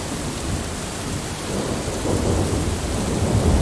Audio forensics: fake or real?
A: real